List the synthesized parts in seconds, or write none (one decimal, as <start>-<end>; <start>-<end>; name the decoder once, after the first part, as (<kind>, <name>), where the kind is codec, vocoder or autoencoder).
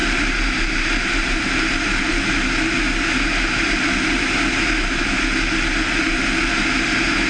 0.0-2.3 (vocoder, BigVGAN v2)